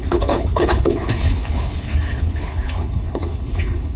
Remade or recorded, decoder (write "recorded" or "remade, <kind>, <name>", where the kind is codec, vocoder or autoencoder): remade, codec, HILCodec